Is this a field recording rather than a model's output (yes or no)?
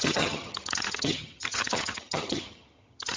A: no